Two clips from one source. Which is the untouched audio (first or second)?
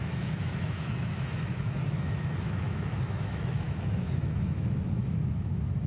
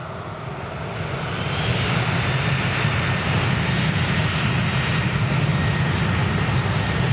second